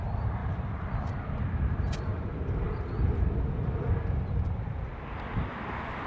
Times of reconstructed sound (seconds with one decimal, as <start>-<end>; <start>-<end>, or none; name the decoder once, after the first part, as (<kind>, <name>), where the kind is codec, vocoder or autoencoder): 0.4-1.0 (vocoder, BigVGAN v2)

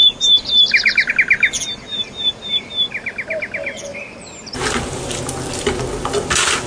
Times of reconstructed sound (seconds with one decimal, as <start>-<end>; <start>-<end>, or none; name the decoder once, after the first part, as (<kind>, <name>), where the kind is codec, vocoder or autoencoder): 0.0-1.1 (vocoder, BigVGAN v2); 1.9-2.9; 3.9-5.2